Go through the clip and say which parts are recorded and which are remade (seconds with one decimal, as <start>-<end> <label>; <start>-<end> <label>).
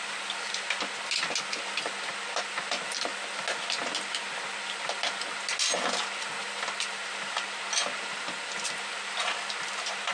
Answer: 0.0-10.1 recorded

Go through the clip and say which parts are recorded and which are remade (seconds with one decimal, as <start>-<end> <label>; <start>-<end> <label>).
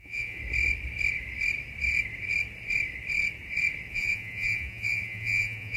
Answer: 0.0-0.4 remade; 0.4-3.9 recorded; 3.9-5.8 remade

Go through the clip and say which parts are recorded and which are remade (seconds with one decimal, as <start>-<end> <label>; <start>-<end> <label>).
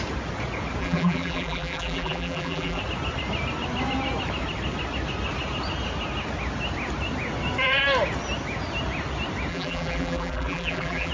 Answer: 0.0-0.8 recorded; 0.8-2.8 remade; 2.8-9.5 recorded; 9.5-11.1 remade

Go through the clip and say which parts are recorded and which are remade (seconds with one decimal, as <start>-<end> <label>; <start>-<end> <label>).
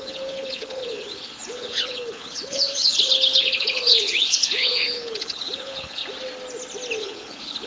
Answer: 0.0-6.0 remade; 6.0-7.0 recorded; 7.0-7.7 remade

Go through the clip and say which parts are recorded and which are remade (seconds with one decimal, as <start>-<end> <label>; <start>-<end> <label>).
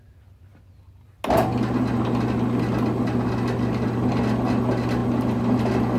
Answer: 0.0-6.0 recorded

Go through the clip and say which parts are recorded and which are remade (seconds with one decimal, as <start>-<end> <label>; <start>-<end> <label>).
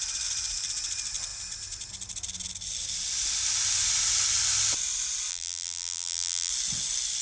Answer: 0.0-5.3 recorded; 5.3-6.5 remade; 6.5-7.2 recorded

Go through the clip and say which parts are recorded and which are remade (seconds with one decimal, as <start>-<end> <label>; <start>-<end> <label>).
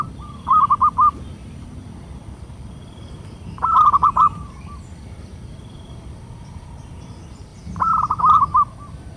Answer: 0.0-7.5 remade; 7.5-8.2 recorded; 8.2-9.2 remade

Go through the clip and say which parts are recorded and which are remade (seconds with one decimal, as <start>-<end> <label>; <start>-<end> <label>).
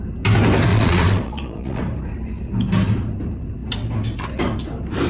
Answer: 0.0-0.7 recorded; 0.7-1.8 remade; 1.8-5.1 recorded